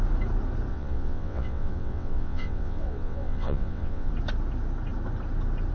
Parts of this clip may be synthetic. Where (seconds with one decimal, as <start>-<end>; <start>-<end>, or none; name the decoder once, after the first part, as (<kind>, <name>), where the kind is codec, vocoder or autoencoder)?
0.7-4.1 (vocoder, WaveNeXt)